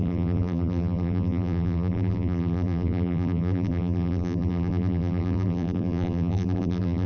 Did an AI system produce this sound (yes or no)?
yes